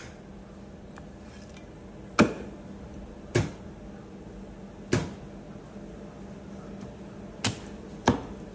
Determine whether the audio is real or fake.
real